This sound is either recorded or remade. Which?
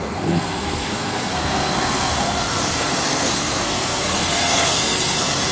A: remade